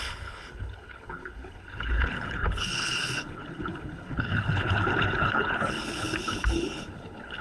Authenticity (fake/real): fake